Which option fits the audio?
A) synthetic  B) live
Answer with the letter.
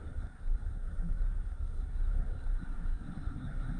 A